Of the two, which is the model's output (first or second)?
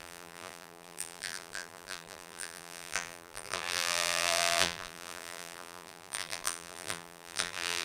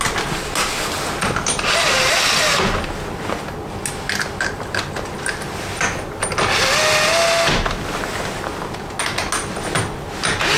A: first